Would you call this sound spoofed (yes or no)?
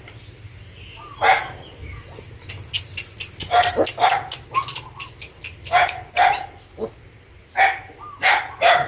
no